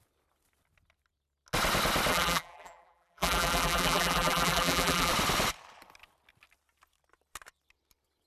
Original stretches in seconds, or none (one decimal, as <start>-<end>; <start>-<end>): 0.0-2.1; 5.1-8.3